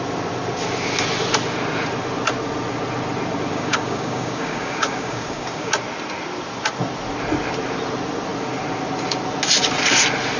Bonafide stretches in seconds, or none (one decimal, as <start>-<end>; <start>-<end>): 0.0-3.5; 5.7-10.4